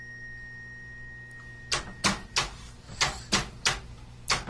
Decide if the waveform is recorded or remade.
recorded